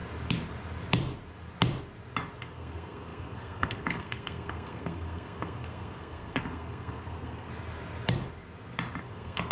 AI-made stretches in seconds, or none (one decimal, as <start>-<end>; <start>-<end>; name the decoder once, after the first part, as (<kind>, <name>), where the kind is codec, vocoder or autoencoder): 2.4-7.5 (codec, SNAC); 9.0-9.5